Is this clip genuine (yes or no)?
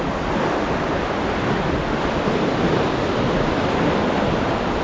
yes